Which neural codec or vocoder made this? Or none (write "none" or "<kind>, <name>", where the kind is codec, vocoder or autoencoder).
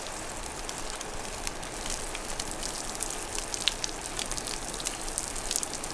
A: none